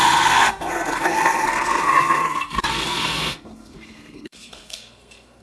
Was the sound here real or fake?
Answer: fake